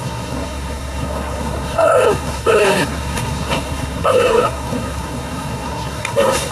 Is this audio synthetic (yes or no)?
yes